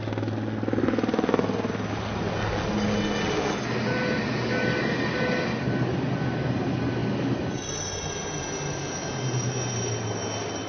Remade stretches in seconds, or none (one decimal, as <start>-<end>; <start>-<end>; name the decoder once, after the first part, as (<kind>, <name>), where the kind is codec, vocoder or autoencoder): none

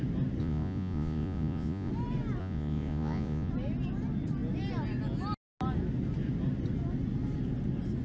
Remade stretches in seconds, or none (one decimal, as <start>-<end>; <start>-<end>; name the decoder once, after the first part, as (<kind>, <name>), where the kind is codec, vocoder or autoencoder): 0.4-1.9 (vocoder, Vocos); 2.4-3.5

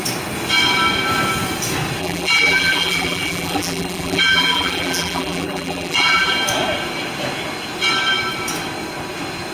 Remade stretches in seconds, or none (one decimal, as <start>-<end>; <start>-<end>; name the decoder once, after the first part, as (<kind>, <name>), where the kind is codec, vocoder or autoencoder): 2.0-6.3 (vocoder, BigVGAN v2)

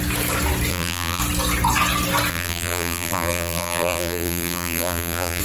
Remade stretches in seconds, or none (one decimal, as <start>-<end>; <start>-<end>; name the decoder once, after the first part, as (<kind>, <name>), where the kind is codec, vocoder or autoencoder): 0.7-1.2 (vocoder, BigVGAN v2); 2.3-5.4